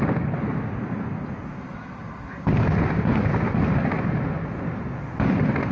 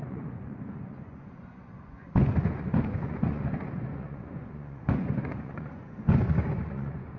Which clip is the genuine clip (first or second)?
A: first